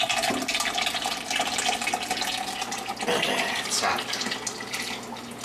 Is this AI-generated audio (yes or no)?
no